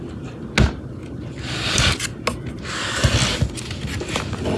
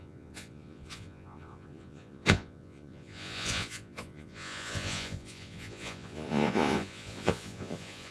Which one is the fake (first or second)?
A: second